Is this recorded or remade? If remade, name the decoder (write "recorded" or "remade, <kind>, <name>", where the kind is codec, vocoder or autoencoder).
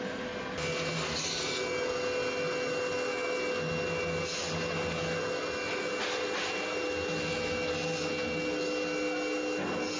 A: recorded